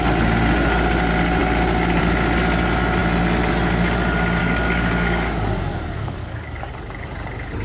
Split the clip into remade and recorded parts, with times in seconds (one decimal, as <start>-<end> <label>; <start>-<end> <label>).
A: 0.0-4.4 recorded; 4.4-6.7 remade; 6.7-7.6 recorded